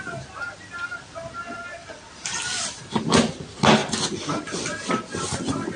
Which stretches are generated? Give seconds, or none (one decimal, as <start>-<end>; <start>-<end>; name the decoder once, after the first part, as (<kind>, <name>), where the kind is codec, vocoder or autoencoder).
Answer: 1.8-2.8 (vocoder, BigVGAN v2); 3.8-4.9